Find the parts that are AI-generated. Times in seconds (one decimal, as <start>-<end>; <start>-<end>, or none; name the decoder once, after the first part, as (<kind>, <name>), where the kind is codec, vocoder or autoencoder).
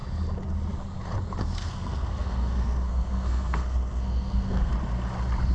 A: 1.4-4.7 (codec, SNAC)